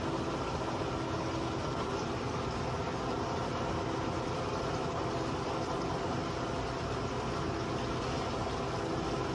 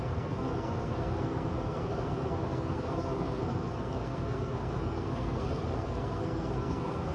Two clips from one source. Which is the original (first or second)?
first